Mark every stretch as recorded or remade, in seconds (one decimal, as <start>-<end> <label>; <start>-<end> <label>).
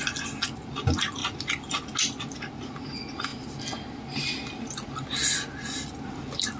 0.0-6.6 recorded